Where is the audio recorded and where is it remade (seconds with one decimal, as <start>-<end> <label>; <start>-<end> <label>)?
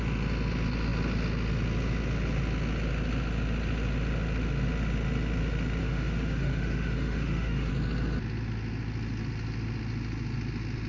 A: 0.0-5.8 recorded; 5.8-7.7 remade; 7.7-10.9 recorded